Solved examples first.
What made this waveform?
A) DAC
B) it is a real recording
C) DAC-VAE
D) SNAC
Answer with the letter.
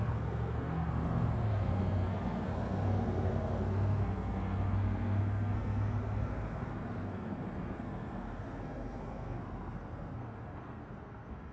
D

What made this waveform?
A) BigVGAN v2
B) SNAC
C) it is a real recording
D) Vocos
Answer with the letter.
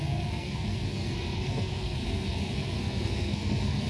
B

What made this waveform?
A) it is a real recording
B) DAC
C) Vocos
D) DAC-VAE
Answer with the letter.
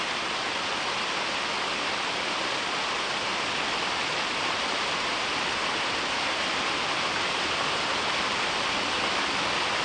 A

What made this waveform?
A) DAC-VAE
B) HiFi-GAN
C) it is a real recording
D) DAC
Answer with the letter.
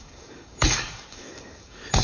D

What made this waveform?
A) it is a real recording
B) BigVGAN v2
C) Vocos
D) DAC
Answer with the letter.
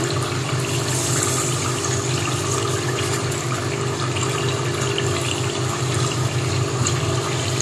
A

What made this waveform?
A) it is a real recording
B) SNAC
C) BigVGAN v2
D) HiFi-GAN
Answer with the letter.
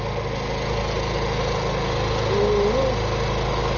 A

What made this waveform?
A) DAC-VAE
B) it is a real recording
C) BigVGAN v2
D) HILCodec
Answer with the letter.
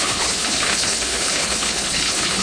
D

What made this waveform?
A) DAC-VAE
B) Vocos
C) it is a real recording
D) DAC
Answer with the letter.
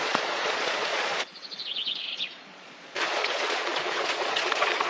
B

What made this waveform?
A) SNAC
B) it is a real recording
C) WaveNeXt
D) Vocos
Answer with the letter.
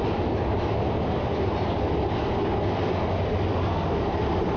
B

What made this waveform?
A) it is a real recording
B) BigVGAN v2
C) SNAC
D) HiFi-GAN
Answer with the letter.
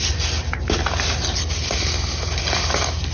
A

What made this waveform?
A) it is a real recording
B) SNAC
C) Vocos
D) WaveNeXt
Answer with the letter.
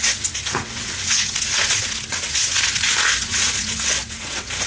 D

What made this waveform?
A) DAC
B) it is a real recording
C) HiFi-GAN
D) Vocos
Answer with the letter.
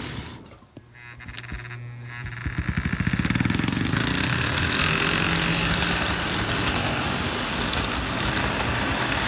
B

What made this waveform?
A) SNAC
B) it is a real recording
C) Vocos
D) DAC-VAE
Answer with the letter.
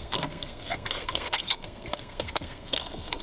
A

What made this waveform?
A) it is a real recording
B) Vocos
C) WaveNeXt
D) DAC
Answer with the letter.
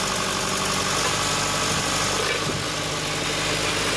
A